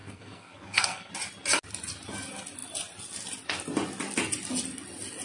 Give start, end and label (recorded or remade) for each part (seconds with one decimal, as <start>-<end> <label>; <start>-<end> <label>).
0.0-1.1 remade; 1.1-5.2 recorded